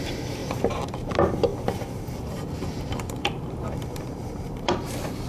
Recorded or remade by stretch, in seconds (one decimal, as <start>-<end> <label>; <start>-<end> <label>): 0.0-0.4 recorded; 0.4-1.1 remade; 1.1-1.5 recorded; 1.5-4.7 remade; 4.7-5.3 recorded